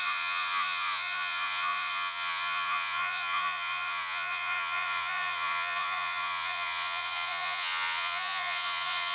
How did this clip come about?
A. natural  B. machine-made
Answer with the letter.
B